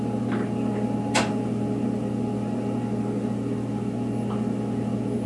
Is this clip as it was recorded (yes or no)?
yes